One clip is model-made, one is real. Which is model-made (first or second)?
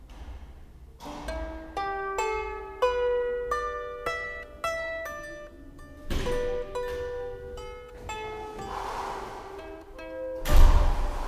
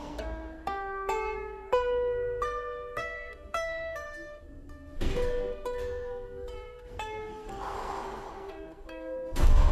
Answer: second